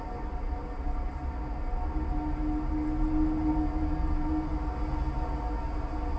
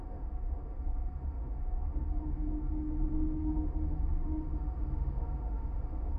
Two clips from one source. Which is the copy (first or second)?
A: second